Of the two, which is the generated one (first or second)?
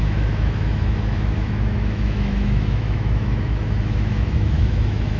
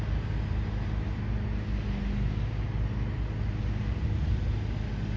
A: first